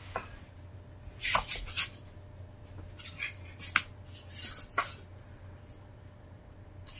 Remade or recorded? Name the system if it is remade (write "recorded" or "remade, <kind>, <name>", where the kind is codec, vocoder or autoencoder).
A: recorded